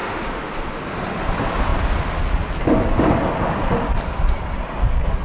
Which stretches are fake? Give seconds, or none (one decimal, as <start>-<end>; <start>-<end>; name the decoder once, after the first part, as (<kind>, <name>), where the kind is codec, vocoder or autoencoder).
0.0-0.8 (autoencoder, DAC-VAE)